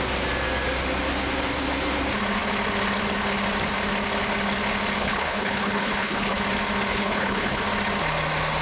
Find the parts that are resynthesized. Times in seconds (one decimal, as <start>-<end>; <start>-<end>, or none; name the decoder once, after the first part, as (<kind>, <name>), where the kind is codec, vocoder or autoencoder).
5.0-6.4 (codec, HILCodec); 6.9-7.6